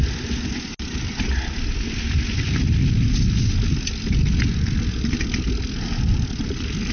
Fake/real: real